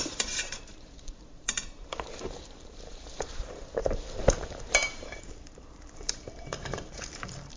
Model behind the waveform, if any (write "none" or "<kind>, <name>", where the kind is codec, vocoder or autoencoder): vocoder, BigVGAN v2